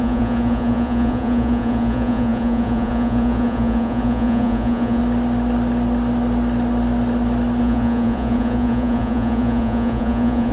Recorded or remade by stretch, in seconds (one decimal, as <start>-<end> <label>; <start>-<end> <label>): 0.0-5.0 remade; 5.0-7.6 recorded; 7.6-10.5 remade